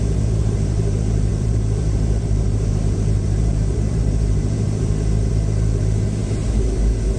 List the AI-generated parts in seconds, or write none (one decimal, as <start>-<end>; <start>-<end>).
0.0-6.4